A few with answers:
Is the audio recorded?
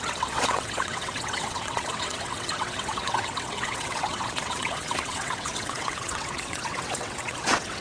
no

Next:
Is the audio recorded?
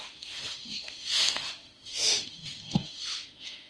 no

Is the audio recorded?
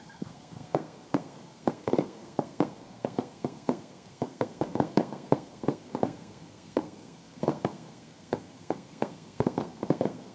no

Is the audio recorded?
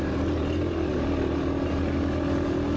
yes